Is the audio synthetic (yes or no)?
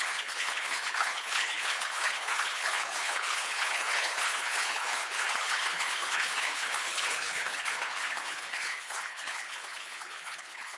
yes